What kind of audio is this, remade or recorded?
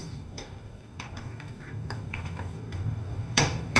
remade